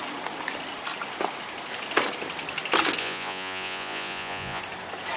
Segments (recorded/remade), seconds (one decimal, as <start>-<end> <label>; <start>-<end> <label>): 0.0-3.0 recorded; 3.0-4.6 remade; 4.6-5.2 recorded